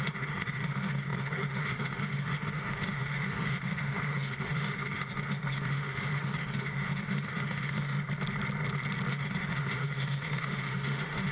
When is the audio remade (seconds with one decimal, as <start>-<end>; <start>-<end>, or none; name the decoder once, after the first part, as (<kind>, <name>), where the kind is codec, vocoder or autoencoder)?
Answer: 0.0-8.0 (autoencoder, DAC-VAE); 9.1-11.3